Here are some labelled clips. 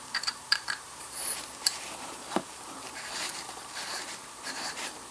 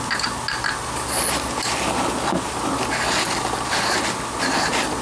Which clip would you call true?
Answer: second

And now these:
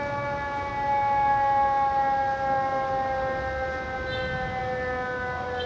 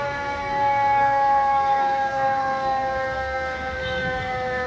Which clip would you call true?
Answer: first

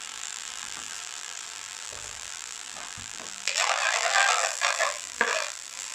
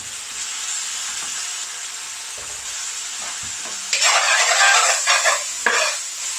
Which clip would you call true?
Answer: second